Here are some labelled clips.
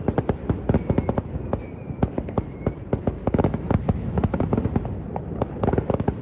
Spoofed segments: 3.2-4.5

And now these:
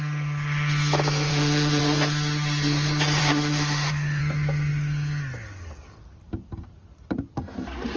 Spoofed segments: 1.3-1.8; 3.2-4.2

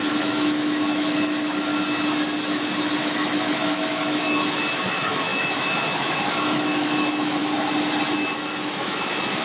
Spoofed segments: 0.0-1.7; 3.0-7.4; 8.5-9.4

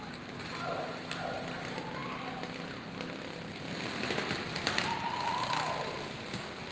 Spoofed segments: none

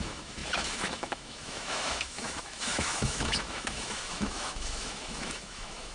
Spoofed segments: 0.0-5.9

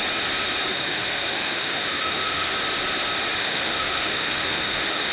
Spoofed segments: 0.7-2.5; 3.4-5.1

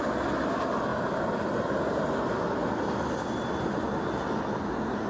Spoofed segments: none